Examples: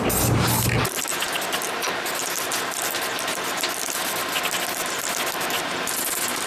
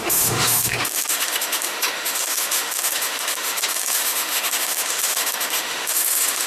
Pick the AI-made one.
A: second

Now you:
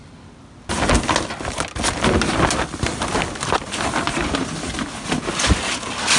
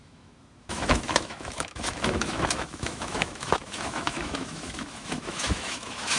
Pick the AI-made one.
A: second